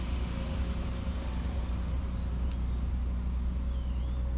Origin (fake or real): real